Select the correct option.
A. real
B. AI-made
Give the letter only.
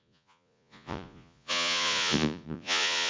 B